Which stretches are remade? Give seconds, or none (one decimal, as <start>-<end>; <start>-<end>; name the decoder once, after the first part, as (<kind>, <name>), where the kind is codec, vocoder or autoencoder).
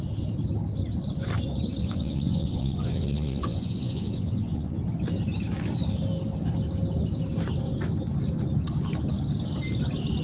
1.8-4.8 (vocoder, Vocos)